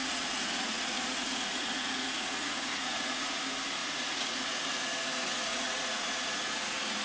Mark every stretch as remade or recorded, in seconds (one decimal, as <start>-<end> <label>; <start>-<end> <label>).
0.0-3.3 remade; 3.3-3.8 recorded; 3.8-7.0 remade